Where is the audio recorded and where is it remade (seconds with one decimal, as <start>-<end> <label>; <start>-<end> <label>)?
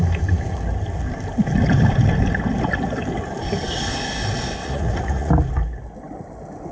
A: 0.0-4.6 recorded; 4.6-5.3 remade; 5.3-6.7 recorded